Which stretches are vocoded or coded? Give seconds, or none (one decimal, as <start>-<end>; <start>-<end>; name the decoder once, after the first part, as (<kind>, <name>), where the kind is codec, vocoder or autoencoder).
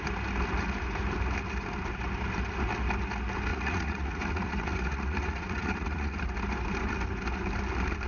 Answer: 3.5-6.2 (vocoder, Vocos)